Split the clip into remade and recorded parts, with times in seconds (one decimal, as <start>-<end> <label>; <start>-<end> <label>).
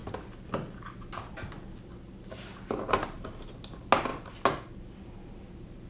0.0-5.9 recorded